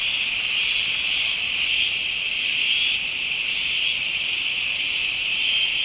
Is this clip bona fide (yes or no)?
no